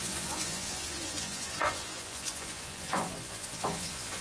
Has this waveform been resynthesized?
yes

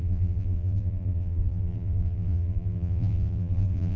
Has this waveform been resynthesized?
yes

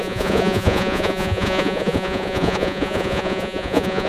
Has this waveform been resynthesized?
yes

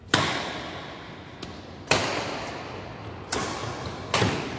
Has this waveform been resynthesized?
no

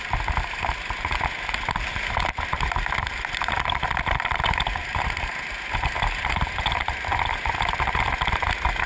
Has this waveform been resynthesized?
yes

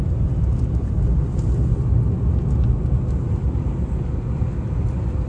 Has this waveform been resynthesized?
no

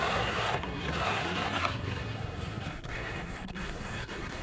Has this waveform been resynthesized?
yes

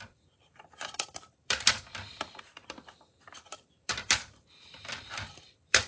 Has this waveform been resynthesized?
yes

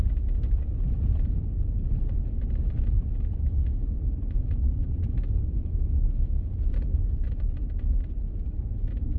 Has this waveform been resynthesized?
no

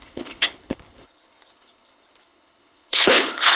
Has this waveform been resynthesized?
yes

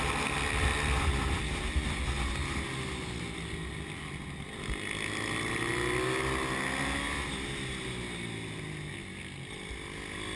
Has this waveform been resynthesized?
no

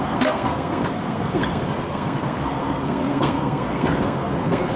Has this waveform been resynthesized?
yes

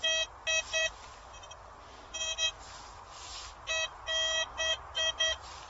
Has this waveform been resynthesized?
no